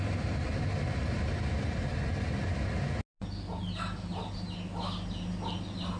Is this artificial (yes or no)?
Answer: no